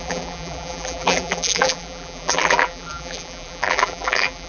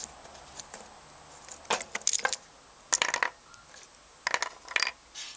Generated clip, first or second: first